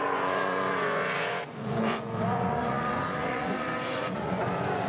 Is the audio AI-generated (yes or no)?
yes